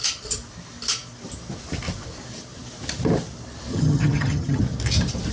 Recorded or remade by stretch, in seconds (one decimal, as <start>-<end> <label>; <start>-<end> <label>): 0.0-3.7 recorded; 3.7-4.6 remade; 4.6-5.3 recorded